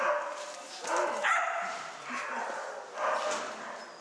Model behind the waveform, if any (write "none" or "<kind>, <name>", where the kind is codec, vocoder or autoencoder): none